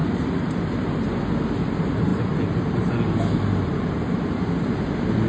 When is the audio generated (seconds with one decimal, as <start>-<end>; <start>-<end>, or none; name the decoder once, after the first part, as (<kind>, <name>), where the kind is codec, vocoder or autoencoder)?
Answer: none